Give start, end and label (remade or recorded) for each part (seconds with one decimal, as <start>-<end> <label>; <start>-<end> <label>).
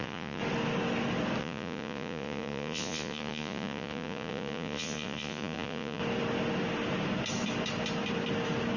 0.0-0.4 remade; 0.4-1.4 recorded; 1.4-6.0 remade; 6.0-8.8 recorded